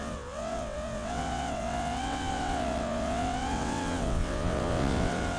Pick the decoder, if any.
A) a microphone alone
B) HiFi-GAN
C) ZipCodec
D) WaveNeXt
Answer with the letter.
D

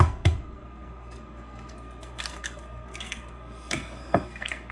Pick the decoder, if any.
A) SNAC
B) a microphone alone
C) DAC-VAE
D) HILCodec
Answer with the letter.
A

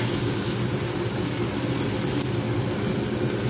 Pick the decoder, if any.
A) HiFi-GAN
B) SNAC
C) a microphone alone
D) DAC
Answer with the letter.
C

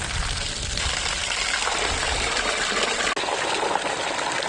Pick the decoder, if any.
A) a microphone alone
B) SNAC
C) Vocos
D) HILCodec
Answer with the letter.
A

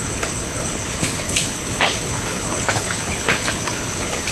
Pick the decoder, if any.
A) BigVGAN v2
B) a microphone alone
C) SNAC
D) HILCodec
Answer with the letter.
D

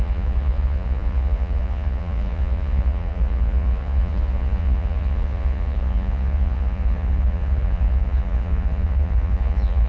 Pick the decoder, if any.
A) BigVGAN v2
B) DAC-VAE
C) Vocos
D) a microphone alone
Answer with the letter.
C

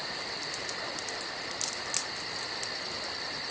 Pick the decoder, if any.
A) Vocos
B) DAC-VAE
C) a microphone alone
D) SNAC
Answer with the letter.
C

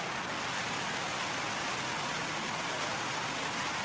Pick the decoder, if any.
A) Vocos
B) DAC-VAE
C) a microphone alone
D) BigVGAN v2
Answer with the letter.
C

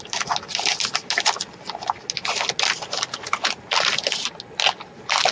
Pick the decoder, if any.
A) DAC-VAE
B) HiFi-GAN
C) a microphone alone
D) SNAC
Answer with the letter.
C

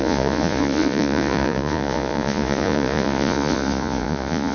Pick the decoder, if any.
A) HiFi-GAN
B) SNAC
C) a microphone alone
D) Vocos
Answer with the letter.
D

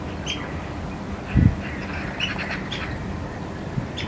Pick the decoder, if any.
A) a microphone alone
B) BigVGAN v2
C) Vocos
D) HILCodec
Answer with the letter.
A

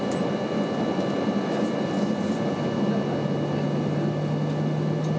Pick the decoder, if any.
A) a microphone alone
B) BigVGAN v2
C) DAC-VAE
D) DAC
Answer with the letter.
A